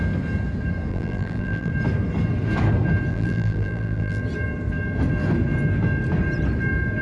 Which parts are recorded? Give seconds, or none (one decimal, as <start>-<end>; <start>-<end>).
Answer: 0.0-0.9; 1.7-3.1; 4.2-7.0